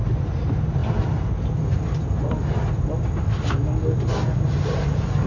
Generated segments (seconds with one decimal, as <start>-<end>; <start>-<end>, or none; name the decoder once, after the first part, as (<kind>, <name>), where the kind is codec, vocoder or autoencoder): none